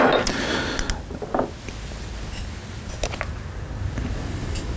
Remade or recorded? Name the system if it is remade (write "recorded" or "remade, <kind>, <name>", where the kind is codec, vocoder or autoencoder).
recorded